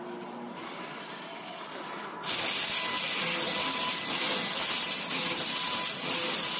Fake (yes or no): no